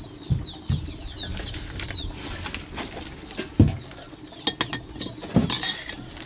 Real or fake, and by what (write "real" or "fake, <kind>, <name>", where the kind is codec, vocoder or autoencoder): real